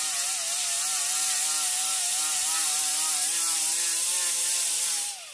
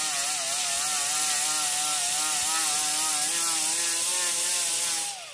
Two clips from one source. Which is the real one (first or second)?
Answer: second